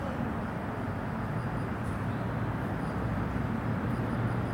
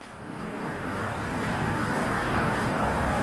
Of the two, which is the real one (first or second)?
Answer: first